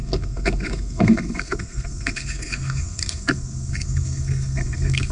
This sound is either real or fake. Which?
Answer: fake